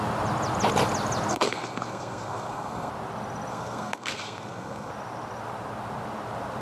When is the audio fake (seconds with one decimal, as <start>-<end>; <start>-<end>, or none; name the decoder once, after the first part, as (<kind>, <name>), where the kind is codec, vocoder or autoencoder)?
1.3-2.9 (codec, SNAC); 3.5-4.9